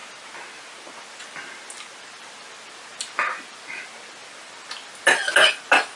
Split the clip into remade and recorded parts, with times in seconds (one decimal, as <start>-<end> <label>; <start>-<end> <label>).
0.0-6.0 recorded